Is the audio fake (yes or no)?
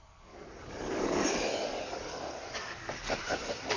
yes